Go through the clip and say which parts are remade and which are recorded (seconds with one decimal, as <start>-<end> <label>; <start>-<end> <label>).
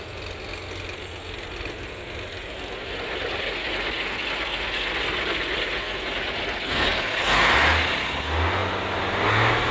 0.0-9.7 recorded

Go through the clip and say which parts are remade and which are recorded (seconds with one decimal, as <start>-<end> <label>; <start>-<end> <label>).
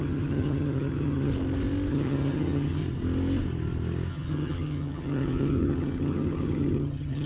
0.0-1.3 remade; 1.3-1.9 recorded; 1.9-2.8 remade; 2.8-4.1 recorded; 4.1-7.3 remade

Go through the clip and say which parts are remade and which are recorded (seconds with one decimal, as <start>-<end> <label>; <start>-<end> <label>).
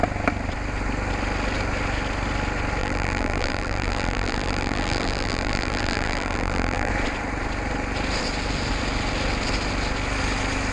0.0-2.8 recorded; 2.8-6.9 remade; 6.9-10.7 recorded